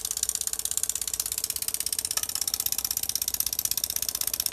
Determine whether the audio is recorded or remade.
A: recorded